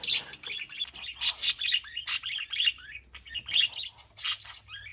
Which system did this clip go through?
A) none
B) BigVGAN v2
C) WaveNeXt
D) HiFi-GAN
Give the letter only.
A